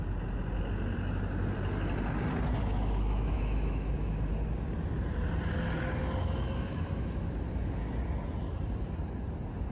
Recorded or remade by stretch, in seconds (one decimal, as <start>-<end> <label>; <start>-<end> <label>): 0.0-2.6 recorded; 2.6-4.3 remade; 4.3-6.2 recorded; 6.2-7.4 remade; 7.4-9.7 recorded